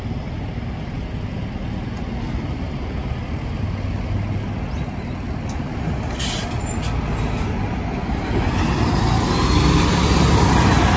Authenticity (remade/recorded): recorded